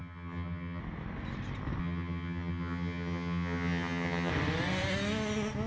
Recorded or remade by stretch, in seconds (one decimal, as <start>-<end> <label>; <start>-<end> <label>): 0.0-0.8 remade; 0.8-1.8 recorded; 1.8-4.3 remade; 4.3-5.7 recorded